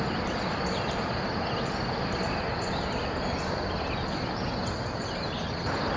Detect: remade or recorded recorded